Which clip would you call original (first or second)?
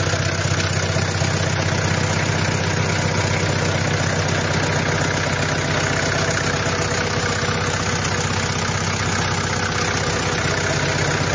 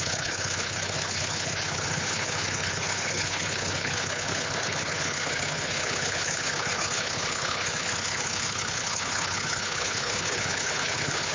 first